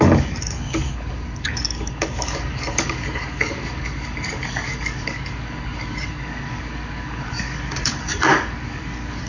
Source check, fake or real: fake